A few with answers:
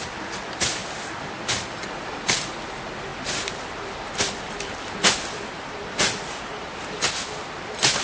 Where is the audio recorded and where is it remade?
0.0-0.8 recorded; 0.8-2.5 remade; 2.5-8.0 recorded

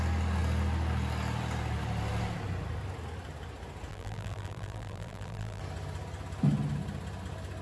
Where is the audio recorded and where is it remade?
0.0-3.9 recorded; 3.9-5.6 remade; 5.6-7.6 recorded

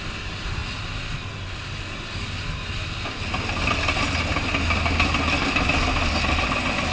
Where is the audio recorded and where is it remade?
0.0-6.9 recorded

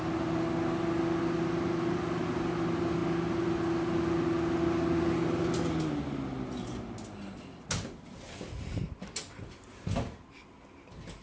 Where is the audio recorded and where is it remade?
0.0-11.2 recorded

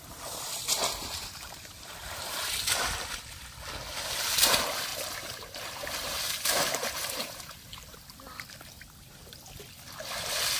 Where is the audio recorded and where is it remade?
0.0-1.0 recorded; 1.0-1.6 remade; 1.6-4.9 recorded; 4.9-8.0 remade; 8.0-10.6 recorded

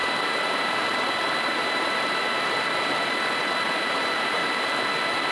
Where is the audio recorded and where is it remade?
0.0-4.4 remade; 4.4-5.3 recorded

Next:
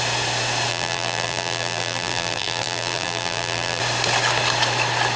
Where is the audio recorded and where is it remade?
0.0-0.7 recorded; 0.7-3.8 remade; 3.8-5.2 recorded

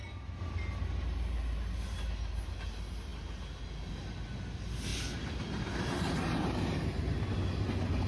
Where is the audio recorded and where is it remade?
0.0-4.9 recorded; 4.9-7.2 remade; 7.2-8.1 recorded